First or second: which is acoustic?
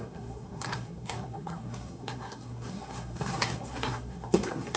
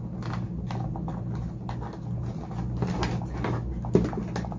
second